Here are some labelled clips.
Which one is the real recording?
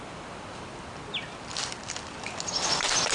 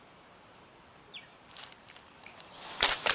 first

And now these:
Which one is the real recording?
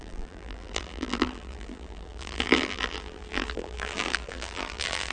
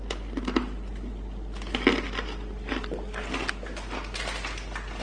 second